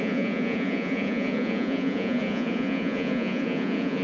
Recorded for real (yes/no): no